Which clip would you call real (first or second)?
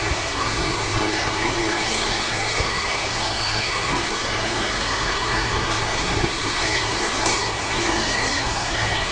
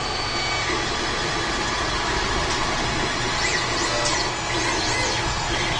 second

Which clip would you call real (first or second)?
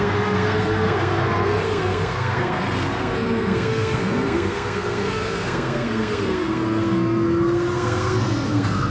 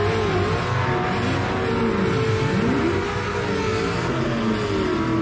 second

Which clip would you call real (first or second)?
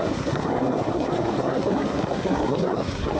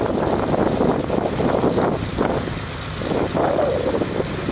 second